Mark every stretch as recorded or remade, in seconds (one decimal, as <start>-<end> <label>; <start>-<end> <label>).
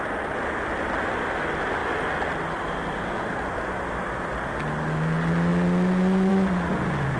0.0-7.2 recorded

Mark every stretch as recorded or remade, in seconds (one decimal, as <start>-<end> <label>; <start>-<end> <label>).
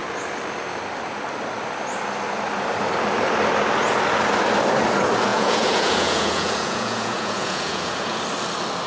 0.0-5.3 recorded; 5.3-8.2 remade; 8.2-8.9 recorded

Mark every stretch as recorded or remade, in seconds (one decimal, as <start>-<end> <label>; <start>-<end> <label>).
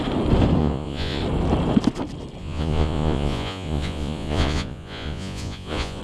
0.0-0.6 recorded; 0.6-1.2 remade; 1.2-2.4 recorded; 2.4-6.0 remade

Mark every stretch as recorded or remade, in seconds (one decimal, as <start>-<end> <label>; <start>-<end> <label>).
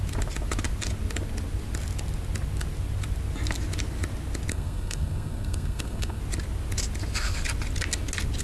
0.0-4.5 recorded; 4.5-6.2 remade; 6.2-8.4 recorded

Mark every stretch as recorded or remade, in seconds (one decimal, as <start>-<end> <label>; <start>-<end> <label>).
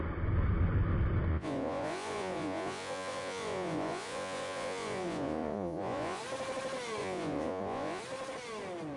0.0-1.3 recorded; 1.3-6.2 remade; 6.2-7.0 recorded; 7.0-8.0 remade; 8.0-9.0 recorded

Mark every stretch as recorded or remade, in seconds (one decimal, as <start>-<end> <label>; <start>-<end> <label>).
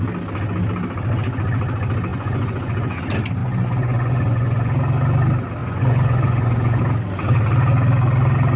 0.0-2.1 recorded; 2.1-3.0 remade; 3.0-3.4 recorded; 3.4-4.7 remade; 4.7-5.6 recorded; 5.6-6.8 remade; 6.8-8.6 recorded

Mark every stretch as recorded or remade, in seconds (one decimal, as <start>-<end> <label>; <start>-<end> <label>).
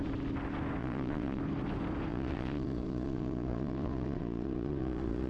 0.0-0.8 recorded; 0.8-1.4 remade; 1.4-2.1 recorded; 2.1-5.3 remade